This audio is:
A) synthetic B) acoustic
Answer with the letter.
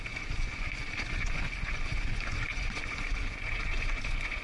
A